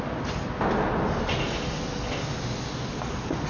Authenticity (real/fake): real